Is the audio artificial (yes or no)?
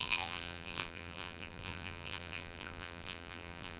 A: yes